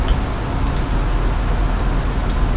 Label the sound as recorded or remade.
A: recorded